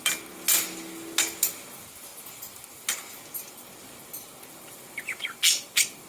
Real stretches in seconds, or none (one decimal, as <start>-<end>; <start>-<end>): 0.0-6.1